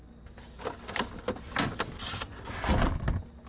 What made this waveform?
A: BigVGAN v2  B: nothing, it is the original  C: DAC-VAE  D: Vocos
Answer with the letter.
B